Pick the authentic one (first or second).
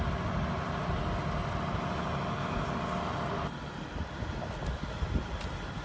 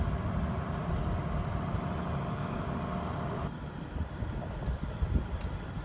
first